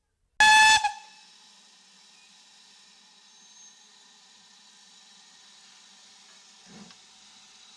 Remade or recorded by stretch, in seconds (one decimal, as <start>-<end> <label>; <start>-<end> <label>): 0.0-7.8 recorded